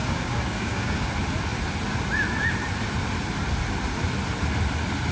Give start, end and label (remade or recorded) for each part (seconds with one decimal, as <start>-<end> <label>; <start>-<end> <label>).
0.0-1.1 remade; 1.1-5.1 recorded